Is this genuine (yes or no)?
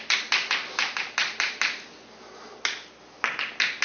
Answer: yes